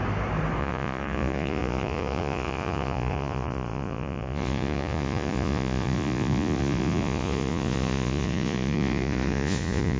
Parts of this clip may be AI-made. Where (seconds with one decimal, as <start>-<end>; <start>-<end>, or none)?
0.6-10.0